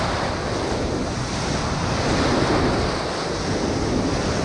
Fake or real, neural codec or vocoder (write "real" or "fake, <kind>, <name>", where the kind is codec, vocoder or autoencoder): real